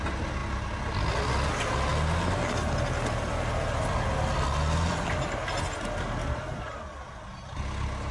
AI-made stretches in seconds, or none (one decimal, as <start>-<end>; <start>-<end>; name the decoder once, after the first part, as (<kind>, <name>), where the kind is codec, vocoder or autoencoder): none